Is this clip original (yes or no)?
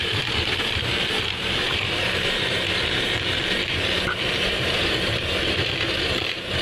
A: no